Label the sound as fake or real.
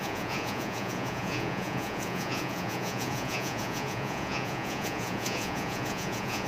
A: fake